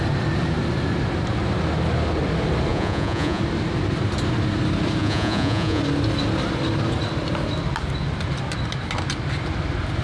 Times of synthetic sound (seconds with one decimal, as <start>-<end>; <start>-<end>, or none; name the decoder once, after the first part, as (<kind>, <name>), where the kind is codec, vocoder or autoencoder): 2.7-3.4 (vocoder, Vocos); 5.0-5.8